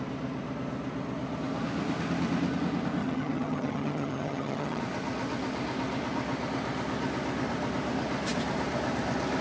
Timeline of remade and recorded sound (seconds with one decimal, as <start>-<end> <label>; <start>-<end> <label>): 0.0-3.0 recorded; 3.0-4.8 remade; 4.8-9.4 recorded